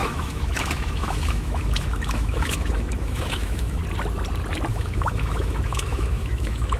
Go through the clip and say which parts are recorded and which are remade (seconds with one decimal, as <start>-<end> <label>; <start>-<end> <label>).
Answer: 0.0-3.8 remade; 3.8-4.7 recorded; 4.7-6.8 remade